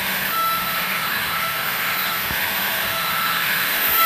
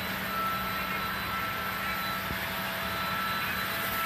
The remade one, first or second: first